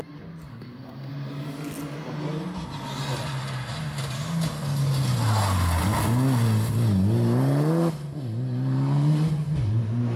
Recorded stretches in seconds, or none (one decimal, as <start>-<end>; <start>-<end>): 0.0-0.5; 1.1-10.2